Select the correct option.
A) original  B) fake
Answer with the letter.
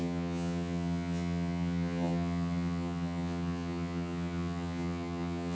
B